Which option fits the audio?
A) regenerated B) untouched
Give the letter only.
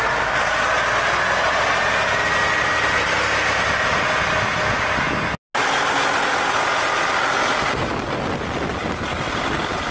B